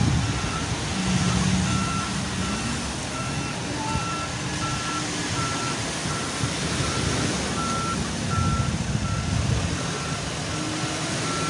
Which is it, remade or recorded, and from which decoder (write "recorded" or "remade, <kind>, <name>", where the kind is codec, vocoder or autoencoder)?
recorded